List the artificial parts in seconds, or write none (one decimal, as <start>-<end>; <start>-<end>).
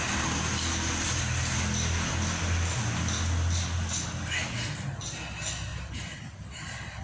5.7-6.2